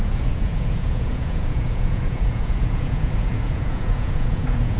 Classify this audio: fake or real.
fake